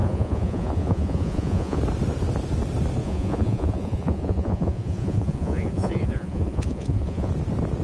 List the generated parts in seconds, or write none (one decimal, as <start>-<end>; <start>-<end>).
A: 0.0-1.8; 3.0-7.3